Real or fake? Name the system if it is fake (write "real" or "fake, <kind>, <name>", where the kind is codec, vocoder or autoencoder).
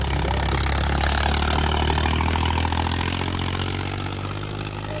real